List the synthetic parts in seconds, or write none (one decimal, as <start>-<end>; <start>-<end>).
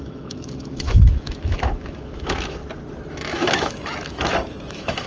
0.0-2.6; 3.1-5.1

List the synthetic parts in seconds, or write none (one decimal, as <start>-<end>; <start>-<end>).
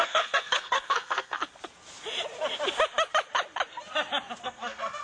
0.0-1.4; 4.4-5.0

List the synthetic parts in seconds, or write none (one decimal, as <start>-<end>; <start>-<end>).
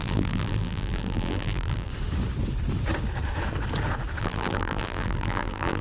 0.0-1.9; 4.2-5.8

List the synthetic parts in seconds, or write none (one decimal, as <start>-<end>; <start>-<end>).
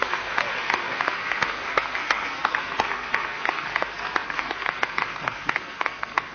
0.0-6.3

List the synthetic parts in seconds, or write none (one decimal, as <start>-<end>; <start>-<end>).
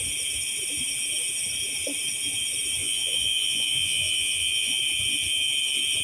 2.8-4.8